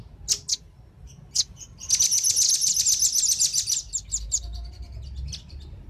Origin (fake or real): real